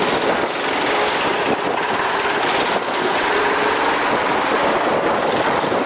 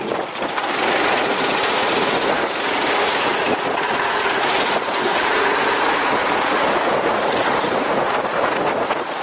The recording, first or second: first